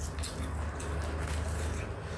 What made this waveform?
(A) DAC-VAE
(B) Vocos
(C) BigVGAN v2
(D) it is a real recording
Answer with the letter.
D